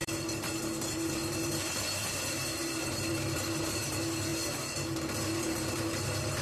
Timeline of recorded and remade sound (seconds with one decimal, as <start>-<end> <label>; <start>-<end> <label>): 0.0-6.4 remade